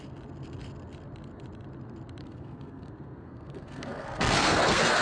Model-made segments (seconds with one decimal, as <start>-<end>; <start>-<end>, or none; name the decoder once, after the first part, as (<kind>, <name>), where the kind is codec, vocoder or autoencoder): 2.2-5.0 (codec, SNAC)